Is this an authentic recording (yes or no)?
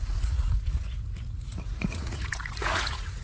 no